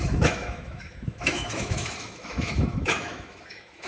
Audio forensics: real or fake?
fake